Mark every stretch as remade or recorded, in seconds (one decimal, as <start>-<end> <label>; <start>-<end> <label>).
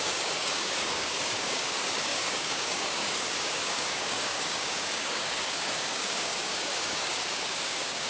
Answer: 0.0-8.1 remade